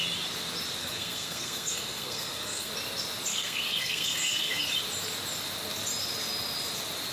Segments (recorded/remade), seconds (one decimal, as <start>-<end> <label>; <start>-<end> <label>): 0.0-0.8 recorded; 0.8-2.7 remade; 2.7-3.3 recorded; 3.3-4.6 remade; 4.6-7.1 recorded